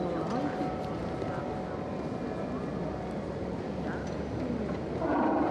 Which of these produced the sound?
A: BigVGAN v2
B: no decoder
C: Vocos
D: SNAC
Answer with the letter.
B